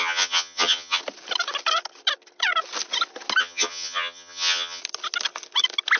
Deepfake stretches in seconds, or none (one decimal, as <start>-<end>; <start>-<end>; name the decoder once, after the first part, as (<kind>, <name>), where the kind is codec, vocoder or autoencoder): 0.0-1.0 (vocoder, HiFi-GAN); 3.4-4.8